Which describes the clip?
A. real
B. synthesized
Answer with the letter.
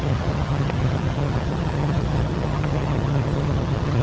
B